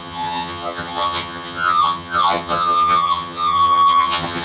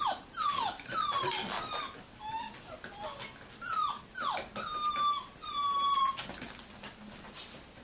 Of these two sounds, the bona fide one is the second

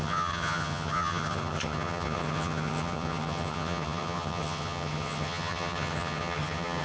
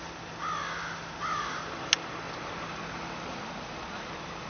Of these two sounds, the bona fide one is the second